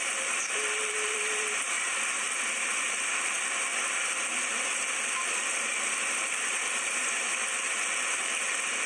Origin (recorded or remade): remade